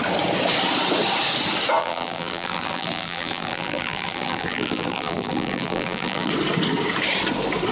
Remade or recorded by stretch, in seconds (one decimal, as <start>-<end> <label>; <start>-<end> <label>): 0.0-1.8 recorded; 1.8-6.3 remade; 6.3-7.7 recorded

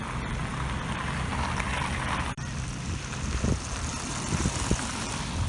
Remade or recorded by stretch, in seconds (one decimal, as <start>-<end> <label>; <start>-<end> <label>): 0.0-5.5 remade

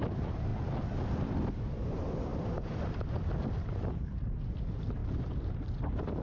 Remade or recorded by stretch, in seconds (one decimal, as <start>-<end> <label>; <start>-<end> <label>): 0.0-0.5 remade; 0.5-1.9 recorded; 1.9-6.2 remade

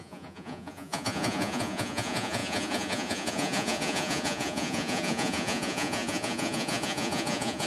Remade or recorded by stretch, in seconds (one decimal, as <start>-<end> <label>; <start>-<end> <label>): 0.0-7.7 remade

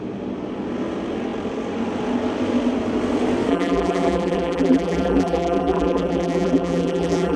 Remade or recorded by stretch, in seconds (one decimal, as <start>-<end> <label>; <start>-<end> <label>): 0.0-3.5 recorded; 3.5-7.4 remade

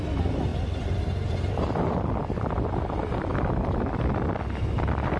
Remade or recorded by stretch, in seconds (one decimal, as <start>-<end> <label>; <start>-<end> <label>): 0.0-5.2 recorded